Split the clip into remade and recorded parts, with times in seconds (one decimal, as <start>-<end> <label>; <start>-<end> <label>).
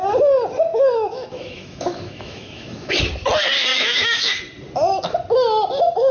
0.0-0.7 recorded; 0.7-3.0 remade; 3.0-3.7 recorded; 3.7-4.4 remade; 4.4-6.1 recorded